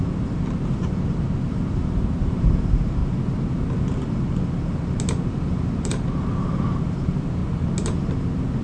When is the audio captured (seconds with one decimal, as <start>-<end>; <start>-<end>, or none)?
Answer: 3.0-5.2; 7.4-8.6